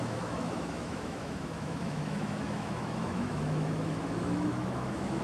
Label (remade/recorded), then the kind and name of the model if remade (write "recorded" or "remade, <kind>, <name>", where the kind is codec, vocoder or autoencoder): remade, autoencoder, DAC-VAE